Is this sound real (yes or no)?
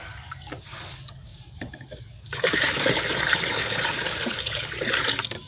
no